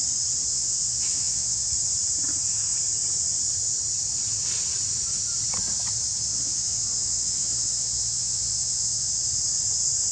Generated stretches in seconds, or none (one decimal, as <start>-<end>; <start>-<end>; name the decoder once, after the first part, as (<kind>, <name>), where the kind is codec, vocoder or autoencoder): 0.5-1.7 (vocoder, Vocos); 6.3-9.1